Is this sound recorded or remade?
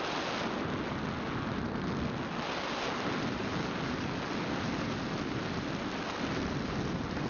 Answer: recorded